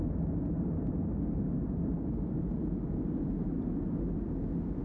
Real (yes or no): yes